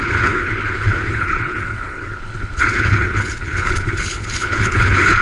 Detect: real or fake fake